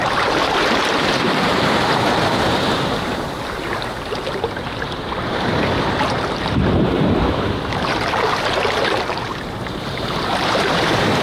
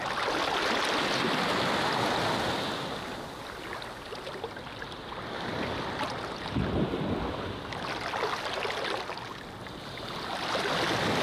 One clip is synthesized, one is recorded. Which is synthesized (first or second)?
first